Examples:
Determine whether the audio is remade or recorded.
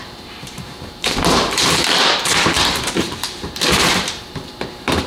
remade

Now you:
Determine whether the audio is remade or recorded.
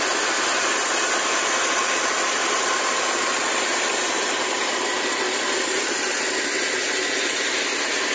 recorded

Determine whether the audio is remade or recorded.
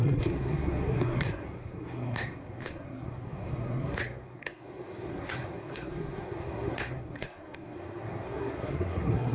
remade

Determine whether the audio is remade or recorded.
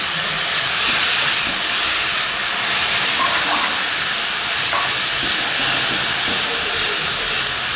recorded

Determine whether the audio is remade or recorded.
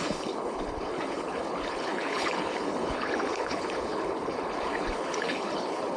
remade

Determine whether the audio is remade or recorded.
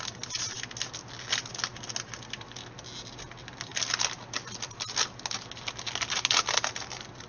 recorded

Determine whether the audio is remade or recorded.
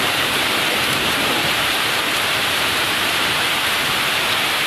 remade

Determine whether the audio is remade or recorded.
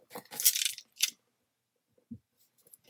recorded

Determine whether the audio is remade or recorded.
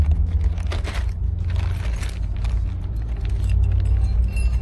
recorded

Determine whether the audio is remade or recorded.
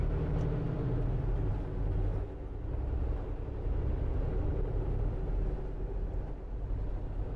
recorded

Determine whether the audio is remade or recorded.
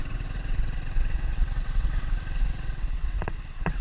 remade